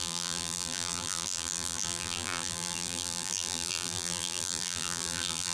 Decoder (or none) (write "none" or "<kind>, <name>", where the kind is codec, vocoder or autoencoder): vocoder, BigVGAN v2